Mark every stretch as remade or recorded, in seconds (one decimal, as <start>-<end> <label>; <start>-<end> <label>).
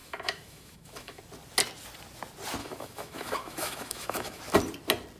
0.0-1.2 remade; 1.2-2.6 recorded; 2.6-4.4 remade; 4.4-5.2 recorded